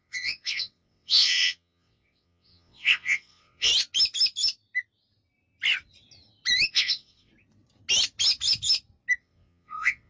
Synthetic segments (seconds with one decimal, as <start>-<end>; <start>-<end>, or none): 0.0-3.7; 6.7-7.3; 9.2-10.1